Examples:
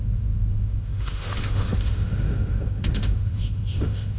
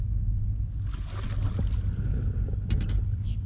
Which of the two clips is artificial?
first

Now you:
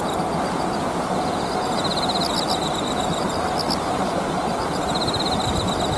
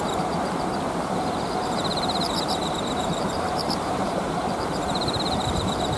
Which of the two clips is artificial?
second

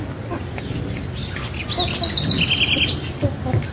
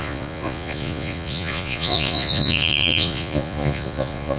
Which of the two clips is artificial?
second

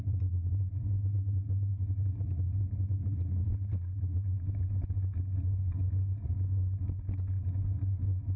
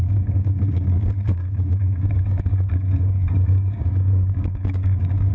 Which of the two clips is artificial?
second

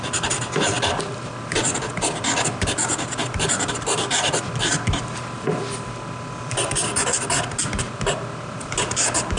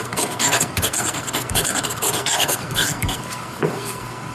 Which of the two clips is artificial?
second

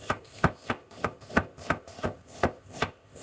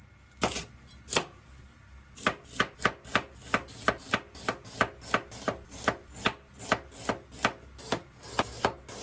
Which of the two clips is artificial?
first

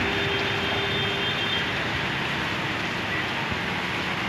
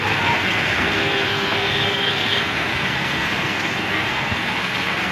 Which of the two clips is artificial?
second